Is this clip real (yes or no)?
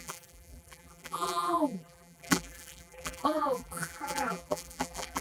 no